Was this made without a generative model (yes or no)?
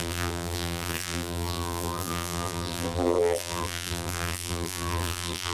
no